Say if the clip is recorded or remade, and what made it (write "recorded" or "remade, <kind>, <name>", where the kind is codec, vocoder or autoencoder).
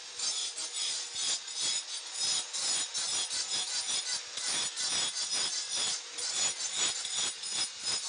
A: recorded